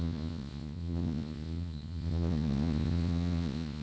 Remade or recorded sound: remade